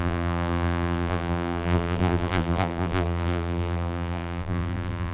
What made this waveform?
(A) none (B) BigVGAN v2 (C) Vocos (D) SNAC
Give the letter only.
B